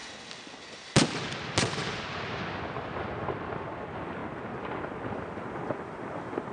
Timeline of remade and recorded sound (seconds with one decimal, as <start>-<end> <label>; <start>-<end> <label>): 0.0-6.5 recorded